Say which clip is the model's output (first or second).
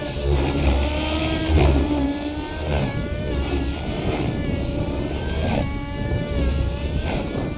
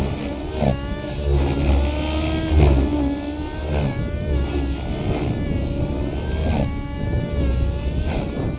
first